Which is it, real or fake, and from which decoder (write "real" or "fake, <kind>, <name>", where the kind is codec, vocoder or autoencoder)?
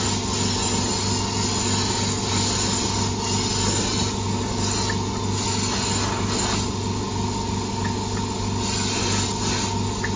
real